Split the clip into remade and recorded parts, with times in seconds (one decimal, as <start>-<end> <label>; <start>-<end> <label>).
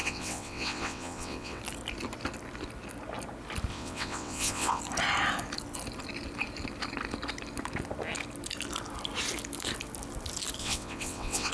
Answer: 0.0-1.6 remade; 1.6-3.7 recorded; 3.7-4.8 remade; 4.8-10.6 recorded; 10.6-11.5 remade